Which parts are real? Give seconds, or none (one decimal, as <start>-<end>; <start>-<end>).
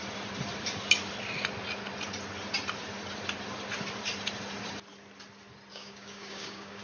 0.0-5.7